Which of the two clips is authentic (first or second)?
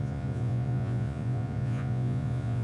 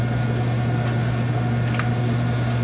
second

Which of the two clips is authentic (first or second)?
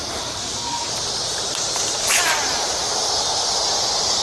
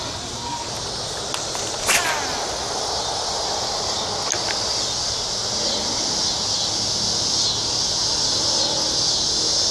second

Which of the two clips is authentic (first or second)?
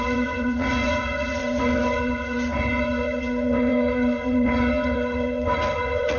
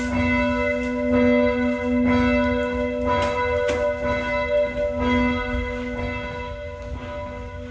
second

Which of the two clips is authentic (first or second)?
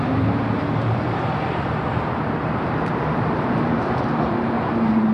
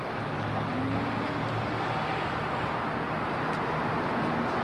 second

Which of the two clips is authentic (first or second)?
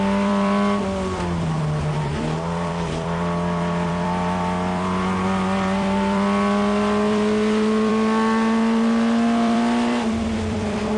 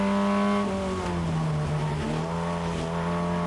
second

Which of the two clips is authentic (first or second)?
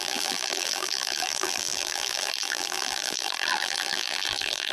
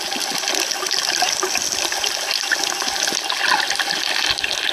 second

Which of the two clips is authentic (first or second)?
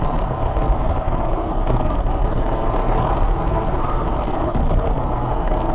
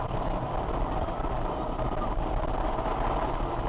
second